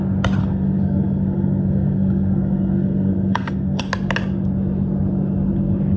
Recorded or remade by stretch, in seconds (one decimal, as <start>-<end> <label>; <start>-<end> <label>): 0.0-0.4 recorded; 0.4-3.8 remade; 3.8-6.0 recorded